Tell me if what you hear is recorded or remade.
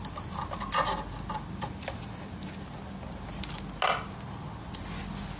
recorded